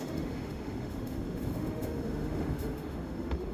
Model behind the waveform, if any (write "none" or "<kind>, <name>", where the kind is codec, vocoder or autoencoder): autoencoder, DAC-VAE